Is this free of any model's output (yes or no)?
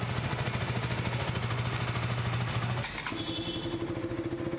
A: yes